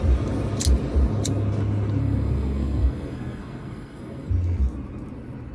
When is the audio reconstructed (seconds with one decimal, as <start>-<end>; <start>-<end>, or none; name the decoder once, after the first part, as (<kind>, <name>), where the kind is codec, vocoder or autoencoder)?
2.0-4.3 (codec, SNAC)